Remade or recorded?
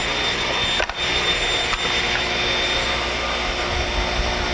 recorded